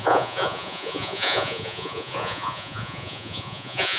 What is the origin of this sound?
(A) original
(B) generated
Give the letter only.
B